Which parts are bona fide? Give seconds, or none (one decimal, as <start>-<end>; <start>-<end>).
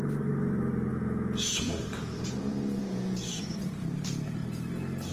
0.0-0.9; 3.4-5.1